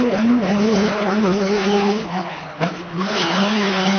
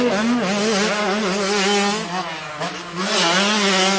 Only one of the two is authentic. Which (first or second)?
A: second